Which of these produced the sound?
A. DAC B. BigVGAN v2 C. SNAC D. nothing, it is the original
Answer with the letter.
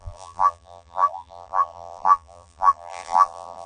B